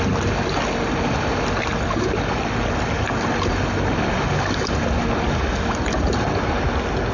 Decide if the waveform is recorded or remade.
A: recorded